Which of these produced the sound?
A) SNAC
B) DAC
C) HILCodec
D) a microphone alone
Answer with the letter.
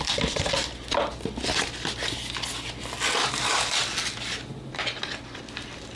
D